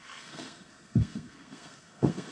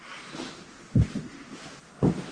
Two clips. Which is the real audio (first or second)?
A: second